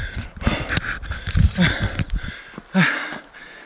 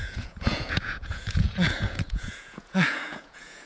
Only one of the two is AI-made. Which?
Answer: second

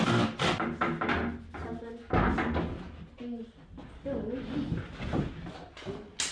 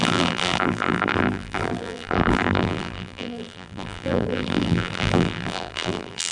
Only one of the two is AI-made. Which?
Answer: second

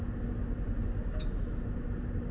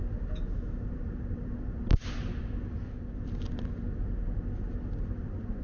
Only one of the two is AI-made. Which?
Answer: second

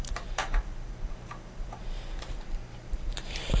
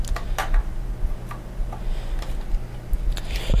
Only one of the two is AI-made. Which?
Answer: first